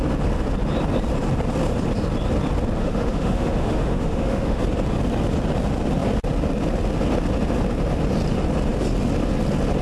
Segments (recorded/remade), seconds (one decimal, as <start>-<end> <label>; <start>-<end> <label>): 0.0-2.8 recorded; 2.8-4.6 remade; 4.6-9.8 recorded